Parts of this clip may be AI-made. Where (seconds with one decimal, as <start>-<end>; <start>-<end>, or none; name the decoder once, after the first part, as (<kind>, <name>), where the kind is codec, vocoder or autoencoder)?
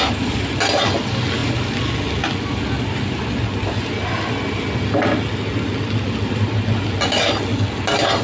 none